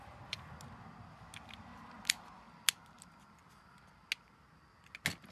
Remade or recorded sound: recorded